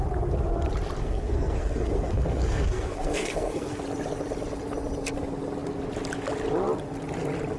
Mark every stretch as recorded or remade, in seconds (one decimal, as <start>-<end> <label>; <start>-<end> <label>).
0.0-1.0 recorded; 1.0-3.8 remade; 3.8-7.6 recorded